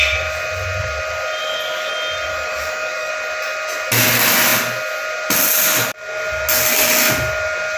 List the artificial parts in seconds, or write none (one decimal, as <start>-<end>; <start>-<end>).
1.4-1.9; 2.3-3.1